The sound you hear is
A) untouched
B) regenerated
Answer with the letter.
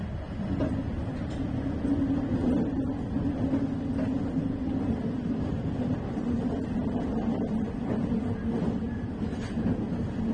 A